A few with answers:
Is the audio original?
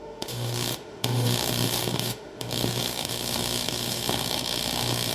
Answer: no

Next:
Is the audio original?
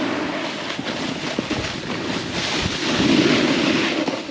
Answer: yes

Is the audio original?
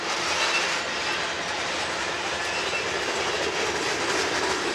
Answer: yes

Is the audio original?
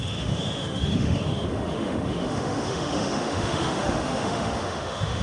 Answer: no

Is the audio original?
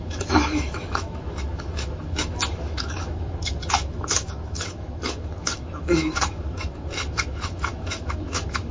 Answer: no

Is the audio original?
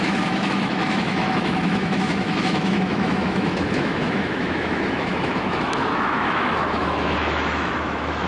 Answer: no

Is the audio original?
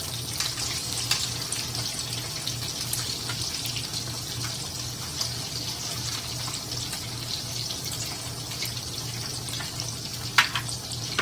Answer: yes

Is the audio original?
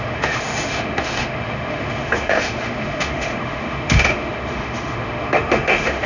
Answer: no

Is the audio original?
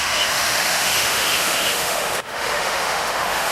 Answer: no